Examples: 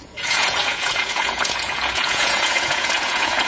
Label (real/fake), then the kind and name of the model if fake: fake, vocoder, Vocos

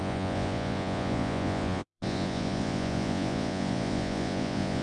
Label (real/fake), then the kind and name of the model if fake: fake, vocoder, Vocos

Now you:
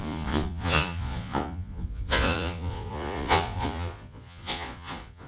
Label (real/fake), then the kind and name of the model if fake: fake, vocoder, Vocos